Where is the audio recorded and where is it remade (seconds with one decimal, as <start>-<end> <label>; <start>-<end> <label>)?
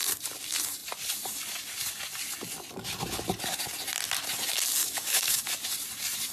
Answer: 0.0-4.8 recorded; 4.8-5.4 remade; 5.4-6.3 recorded